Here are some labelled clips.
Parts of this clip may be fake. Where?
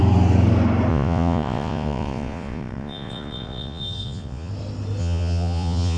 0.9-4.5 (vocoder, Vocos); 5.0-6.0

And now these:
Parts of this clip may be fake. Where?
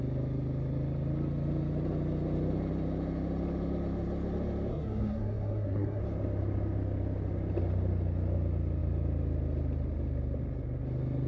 4.7-6.0 (codec, SNAC)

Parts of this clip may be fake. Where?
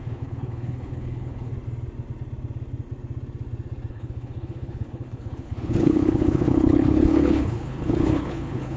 0.0-1.5 (codec, HILCodec); 3.9-8.8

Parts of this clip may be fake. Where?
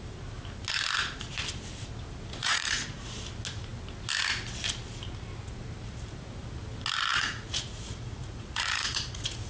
2.4-3.2 (vocoder, Vocos); 7.1-9.5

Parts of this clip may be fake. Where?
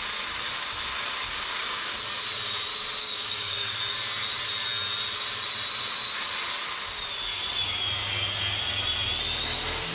3.0-3.8 (codec, DAC)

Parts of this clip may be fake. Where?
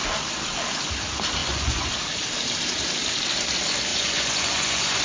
1.4-2.0 (vocoder, Vocos); 3.9-5.0